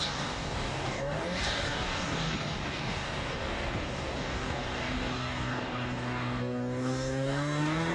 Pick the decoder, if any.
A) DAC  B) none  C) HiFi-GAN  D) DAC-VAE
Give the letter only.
A